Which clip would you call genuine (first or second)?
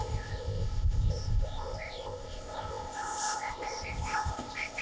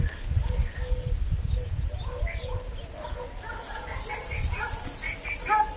second